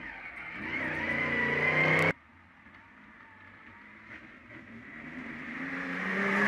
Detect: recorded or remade recorded